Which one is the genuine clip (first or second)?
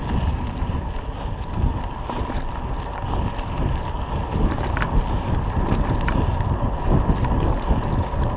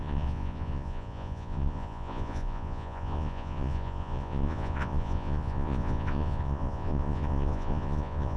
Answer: first